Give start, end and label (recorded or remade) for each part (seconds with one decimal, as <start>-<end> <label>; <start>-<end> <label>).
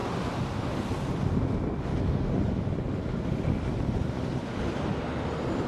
0.0-5.7 recorded